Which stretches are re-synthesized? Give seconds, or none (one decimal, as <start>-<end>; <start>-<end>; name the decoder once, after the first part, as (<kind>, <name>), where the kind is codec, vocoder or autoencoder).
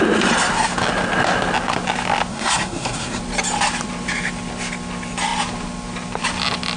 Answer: 2.3-3.2 (codec, SNAC)